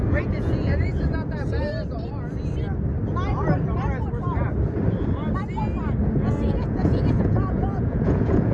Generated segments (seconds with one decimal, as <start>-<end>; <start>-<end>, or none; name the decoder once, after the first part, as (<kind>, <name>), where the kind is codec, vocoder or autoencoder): 0.0-0.9 (vocoder, Vocos); 5.8-8.5